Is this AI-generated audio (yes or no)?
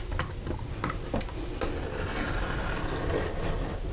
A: no